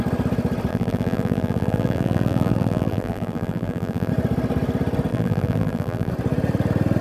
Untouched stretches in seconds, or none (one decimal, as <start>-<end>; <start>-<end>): 0.0-0.7; 4.1-5.1; 6.1-7.0